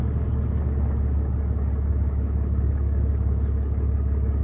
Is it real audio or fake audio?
fake